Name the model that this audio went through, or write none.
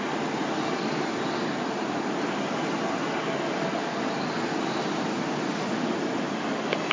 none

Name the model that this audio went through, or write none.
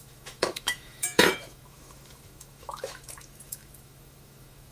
autoencoder, DAC-VAE